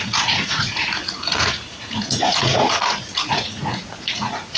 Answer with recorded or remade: remade